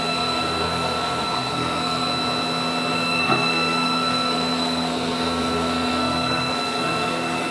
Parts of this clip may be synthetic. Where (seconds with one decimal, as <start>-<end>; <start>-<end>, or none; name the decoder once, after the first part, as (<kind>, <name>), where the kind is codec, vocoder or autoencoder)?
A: 0.0-2.1 (codec, SNAC); 2.9-7.5